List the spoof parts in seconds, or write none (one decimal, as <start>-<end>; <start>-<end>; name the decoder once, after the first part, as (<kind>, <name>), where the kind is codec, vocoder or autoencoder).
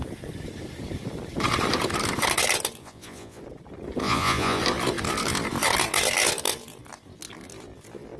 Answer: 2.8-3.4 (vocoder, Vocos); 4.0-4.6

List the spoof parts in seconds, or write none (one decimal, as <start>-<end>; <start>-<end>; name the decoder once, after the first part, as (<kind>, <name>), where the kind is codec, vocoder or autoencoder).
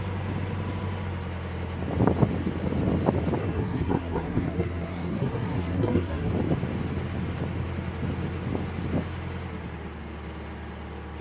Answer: 3.4-6.3 (codec, SNAC)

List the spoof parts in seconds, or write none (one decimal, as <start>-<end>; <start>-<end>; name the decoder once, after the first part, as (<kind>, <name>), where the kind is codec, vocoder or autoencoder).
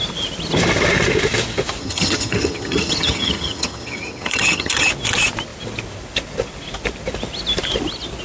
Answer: 1.8-4.9 (vocoder, HiFi-GAN)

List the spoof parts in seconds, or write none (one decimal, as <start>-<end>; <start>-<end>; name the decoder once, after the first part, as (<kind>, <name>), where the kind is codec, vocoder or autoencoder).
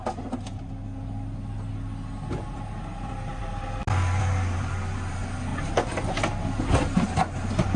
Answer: none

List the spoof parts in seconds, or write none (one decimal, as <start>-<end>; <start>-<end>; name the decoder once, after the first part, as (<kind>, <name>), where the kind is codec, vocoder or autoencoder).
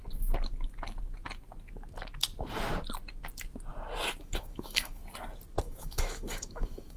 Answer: 4.2-5.0 (autoencoder, DAC-VAE); 5.6-7.0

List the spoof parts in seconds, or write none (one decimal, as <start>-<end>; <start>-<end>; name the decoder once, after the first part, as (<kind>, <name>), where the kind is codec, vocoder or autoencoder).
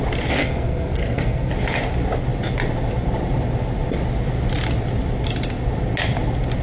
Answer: 0.4-1.5 (codec, SNAC)